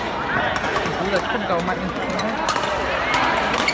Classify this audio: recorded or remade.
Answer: recorded